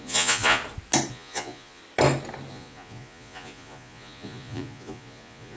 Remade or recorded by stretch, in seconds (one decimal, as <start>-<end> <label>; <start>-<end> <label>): 0.0-0.6 remade; 0.6-1.1 recorded; 1.1-1.8 remade; 1.8-2.5 recorded; 2.5-5.6 remade

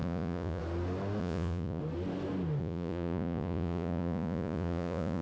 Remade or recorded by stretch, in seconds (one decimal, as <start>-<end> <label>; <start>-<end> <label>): 0.0-0.6 remade; 0.6-1.2 recorded; 1.2-1.8 remade; 1.8-2.6 recorded; 2.6-5.2 remade

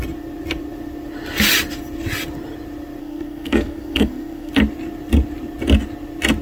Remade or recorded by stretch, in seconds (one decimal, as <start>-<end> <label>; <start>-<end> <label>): 0.0-3.0 recorded; 3.0-4.5 remade; 4.5-6.4 recorded

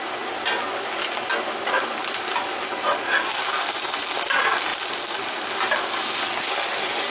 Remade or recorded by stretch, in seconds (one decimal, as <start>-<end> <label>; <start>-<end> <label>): 0.0-7.1 recorded